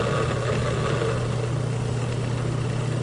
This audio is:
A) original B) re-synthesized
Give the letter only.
A